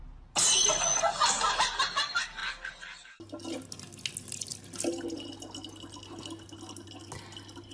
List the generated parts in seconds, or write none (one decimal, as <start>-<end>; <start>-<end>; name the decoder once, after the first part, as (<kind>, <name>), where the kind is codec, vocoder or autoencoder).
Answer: none